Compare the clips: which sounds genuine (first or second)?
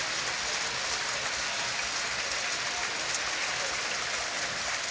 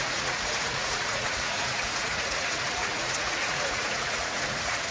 first